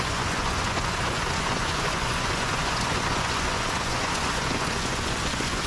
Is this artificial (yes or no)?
yes